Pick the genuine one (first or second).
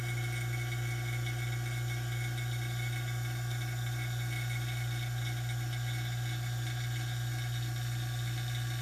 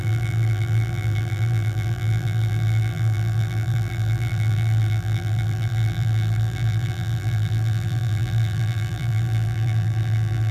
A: first